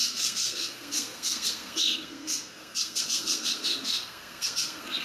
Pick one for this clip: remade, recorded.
remade